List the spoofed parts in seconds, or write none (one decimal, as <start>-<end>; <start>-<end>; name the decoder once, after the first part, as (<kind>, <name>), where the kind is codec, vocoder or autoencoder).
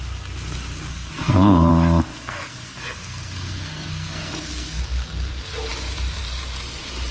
0.9-1.7 (codec, SNAC); 2.1-4.8